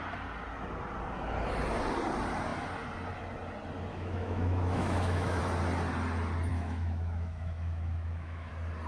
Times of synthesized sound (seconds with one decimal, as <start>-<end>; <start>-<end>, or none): 3.9-5.4; 6.5-8.5